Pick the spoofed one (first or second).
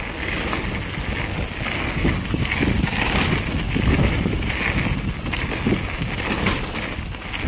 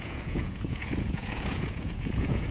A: second